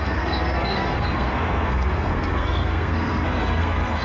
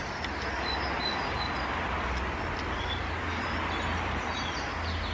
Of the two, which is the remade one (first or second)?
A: first